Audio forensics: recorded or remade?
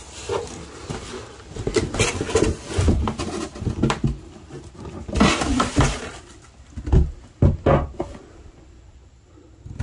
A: recorded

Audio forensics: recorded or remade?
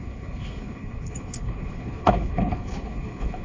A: remade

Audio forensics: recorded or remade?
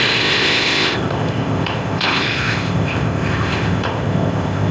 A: remade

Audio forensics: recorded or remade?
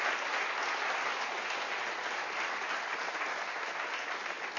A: recorded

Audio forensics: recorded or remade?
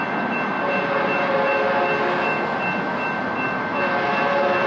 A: recorded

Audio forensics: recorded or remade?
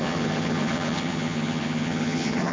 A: remade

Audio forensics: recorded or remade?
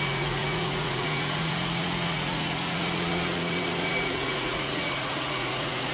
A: remade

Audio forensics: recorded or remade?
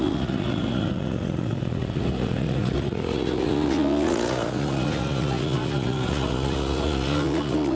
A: remade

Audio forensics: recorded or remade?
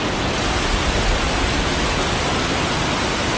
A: recorded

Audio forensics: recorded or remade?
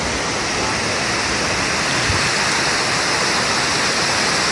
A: recorded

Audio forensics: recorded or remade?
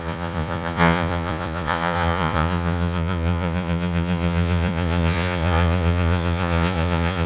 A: remade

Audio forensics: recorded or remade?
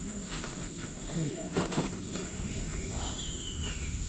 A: remade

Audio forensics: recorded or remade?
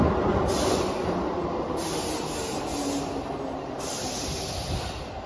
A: recorded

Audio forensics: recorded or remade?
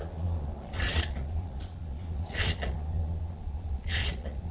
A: remade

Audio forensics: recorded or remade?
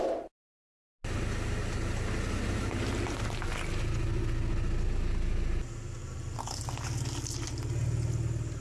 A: recorded